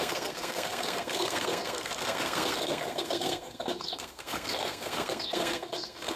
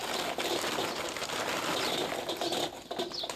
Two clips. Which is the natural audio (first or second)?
second